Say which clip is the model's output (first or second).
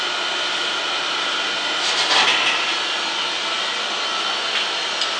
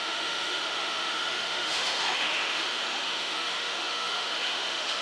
second